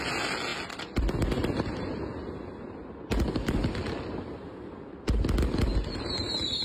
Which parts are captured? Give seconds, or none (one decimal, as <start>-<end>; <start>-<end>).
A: 0.0-6.6